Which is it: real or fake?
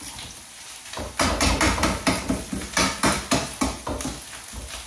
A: real